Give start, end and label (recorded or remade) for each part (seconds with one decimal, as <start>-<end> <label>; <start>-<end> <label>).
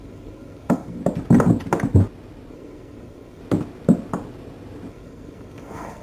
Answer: 0.0-1.0 remade; 1.0-2.5 recorded; 2.5-3.4 remade; 3.4-4.9 recorded; 4.9-6.0 remade